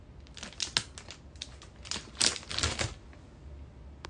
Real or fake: real